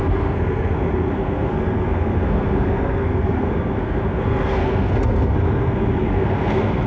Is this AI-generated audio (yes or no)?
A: yes